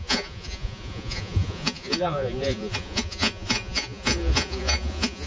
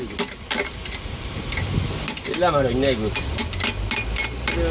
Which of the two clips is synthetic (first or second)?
first